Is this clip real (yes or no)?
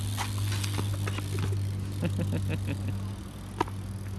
yes